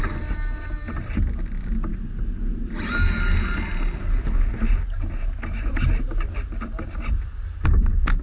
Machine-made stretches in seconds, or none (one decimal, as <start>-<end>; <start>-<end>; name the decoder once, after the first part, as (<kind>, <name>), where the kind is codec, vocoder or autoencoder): 0.7-1.9 (vocoder, BigVGAN v2); 6.6-8.2